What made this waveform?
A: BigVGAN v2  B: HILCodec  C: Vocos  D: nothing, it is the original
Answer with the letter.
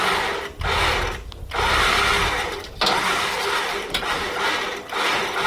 D